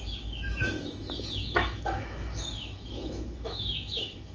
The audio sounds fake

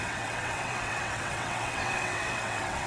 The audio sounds fake